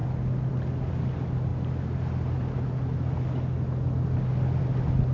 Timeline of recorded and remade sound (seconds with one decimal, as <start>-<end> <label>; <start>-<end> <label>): 0.0-5.1 recorded